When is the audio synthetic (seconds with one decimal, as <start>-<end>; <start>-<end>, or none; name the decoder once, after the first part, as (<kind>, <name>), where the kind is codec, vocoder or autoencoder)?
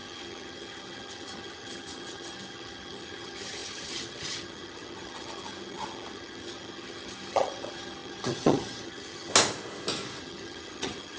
0.0-9.3 (vocoder, HiFi-GAN); 10.2-11.2